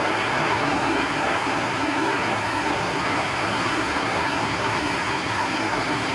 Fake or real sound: fake